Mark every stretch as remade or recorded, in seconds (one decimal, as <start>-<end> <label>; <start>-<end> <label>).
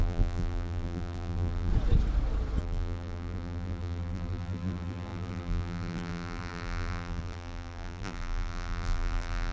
0.0-1.7 remade; 1.7-2.6 recorded; 2.6-9.5 remade